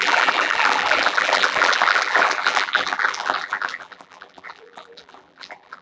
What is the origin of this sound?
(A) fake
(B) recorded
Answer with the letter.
A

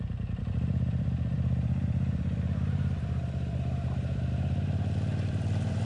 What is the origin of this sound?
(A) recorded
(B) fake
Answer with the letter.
B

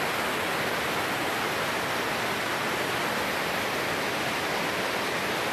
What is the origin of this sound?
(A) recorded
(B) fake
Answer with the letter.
A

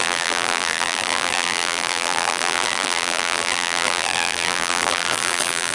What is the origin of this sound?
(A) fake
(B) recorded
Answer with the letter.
A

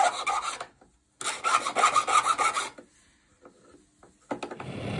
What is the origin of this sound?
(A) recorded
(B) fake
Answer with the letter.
A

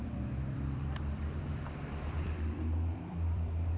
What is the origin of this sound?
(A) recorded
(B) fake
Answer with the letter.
B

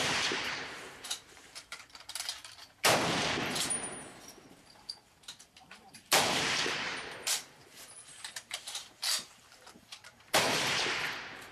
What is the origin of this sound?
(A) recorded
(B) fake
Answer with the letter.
B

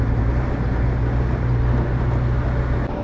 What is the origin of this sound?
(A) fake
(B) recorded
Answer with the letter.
B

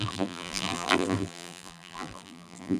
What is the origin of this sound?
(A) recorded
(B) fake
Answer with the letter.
B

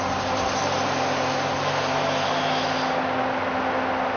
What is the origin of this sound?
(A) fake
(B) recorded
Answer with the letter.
B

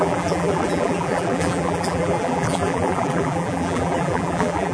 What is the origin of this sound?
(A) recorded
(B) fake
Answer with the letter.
B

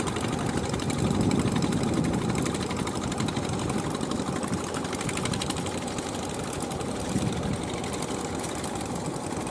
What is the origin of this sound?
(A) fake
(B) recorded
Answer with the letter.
B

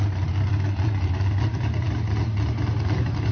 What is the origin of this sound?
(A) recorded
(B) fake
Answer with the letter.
B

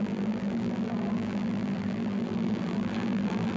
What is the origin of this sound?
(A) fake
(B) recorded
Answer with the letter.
A